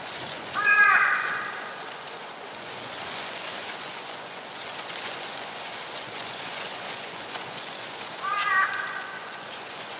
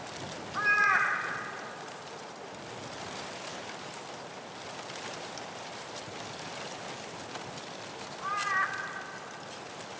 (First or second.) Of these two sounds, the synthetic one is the first